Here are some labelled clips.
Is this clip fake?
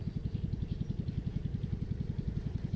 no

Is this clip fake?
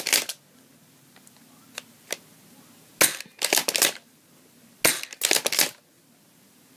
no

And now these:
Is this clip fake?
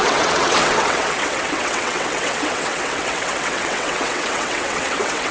yes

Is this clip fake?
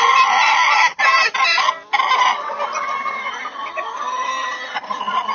no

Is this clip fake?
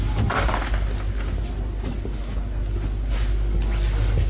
no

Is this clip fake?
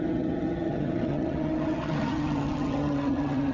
yes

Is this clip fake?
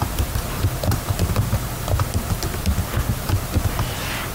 no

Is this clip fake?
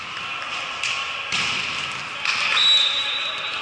no